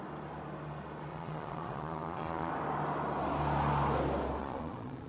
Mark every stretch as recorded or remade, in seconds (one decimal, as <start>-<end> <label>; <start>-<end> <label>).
0.0-1.1 recorded; 1.1-2.5 remade; 2.5-4.4 recorded; 4.4-5.1 remade